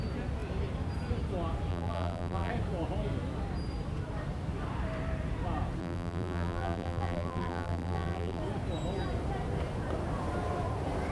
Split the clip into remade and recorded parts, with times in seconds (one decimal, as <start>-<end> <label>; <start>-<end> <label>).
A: 0.0-1.7 recorded; 1.7-2.5 remade; 2.5-5.8 recorded; 5.8-8.4 remade; 8.4-11.1 recorded